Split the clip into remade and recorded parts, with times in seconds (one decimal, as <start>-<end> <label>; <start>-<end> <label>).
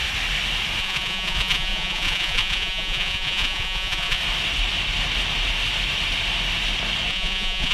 0.0-0.8 recorded; 0.8-4.2 remade; 4.2-7.1 recorded; 7.1-7.7 remade